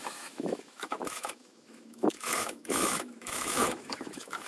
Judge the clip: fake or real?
fake